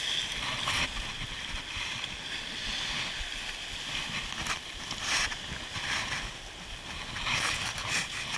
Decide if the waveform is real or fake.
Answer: real